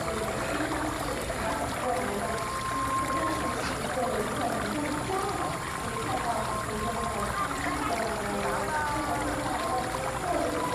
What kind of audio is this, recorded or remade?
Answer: recorded